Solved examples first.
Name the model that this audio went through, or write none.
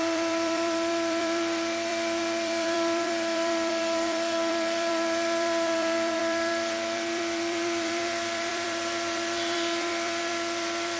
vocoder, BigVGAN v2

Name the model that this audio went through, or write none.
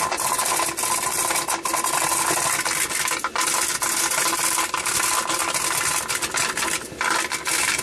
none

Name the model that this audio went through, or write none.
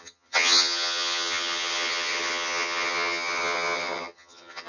vocoder, HiFi-GAN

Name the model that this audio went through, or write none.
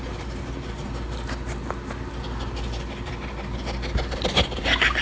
none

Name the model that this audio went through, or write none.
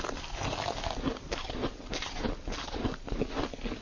none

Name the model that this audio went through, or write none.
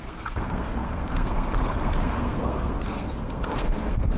codec, SNAC